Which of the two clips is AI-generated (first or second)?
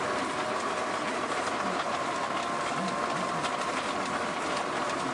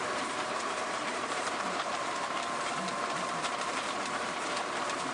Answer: second